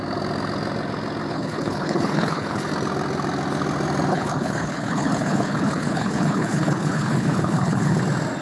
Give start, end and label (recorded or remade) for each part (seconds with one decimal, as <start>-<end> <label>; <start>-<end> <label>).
0.0-1.3 recorded; 1.3-2.7 remade; 2.7-4.1 recorded; 4.1-8.0 remade; 8.0-8.4 recorded